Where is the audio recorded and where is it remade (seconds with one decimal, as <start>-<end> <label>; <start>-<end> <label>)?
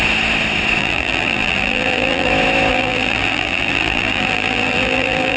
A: 0.0-0.8 recorded; 0.8-2.3 remade; 2.3-2.7 recorded; 2.7-5.4 remade